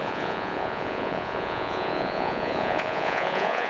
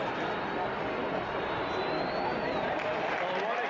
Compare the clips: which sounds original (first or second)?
second